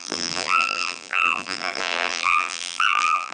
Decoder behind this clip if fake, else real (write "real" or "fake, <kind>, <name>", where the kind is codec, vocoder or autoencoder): fake, vocoder, BigVGAN v2